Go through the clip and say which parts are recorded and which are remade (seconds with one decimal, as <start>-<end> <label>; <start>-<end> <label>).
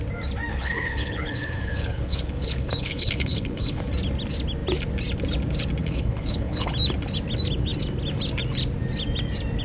0.0-0.5 recorded; 0.5-3.8 remade; 3.8-5.8 recorded; 5.8-6.7 remade; 6.7-9.6 recorded